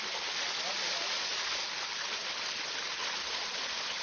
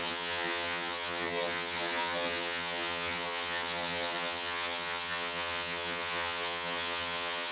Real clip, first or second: first